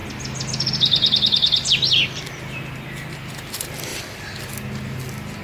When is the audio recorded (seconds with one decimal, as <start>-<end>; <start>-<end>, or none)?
0.0-5.4